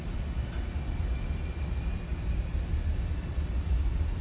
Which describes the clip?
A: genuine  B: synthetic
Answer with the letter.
A